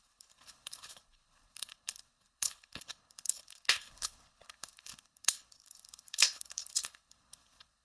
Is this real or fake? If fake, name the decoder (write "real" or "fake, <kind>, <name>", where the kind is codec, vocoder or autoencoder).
fake, codec, HILCodec